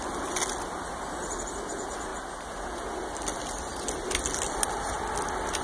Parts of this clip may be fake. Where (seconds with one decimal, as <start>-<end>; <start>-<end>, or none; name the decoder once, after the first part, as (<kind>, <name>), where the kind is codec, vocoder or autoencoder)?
none